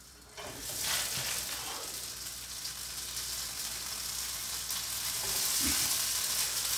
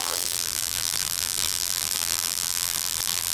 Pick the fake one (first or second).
second